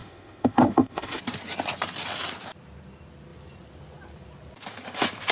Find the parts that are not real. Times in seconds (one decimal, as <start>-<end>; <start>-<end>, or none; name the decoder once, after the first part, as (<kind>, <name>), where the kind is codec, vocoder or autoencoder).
0.0-1.2 (autoencoder, DAC-VAE)